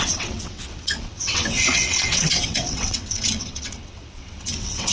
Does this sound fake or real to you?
fake